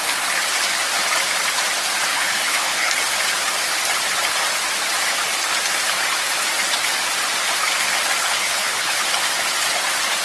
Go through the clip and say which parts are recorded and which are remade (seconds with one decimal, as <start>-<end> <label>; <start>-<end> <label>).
0.0-2.1 recorded; 2.1-2.9 remade; 2.9-8.2 recorded; 8.2-9.0 remade; 9.0-10.2 recorded